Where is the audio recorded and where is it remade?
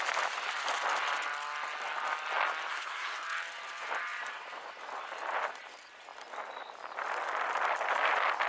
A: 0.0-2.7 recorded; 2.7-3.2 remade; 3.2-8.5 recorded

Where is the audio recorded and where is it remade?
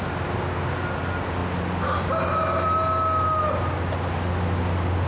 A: 0.0-5.1 recorded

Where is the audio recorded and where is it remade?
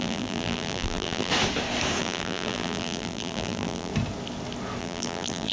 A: 0.0-1.3 remade; 1.3-2.0 recorded; 2.0-3.9 remade; 3.9-4.8 recorded; 4.8-5.5 remade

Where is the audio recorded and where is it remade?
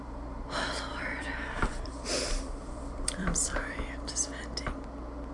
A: 0.0-0.9 recorded; 0.9-4.1 remade; 4.1-5.3 recorded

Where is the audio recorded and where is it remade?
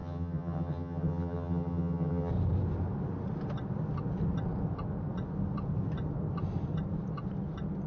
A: 0.0-2.3 remade; 2.3-7.9 recorded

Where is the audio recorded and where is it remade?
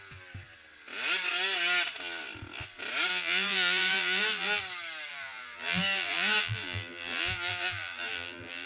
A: 0.0-3.1 recorded; 3.1-4.6 remade; 4.6-5.1 recorded; 5.1-8.7 remade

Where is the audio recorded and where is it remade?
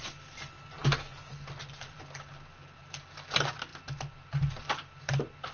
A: 0.0-5.5 recorded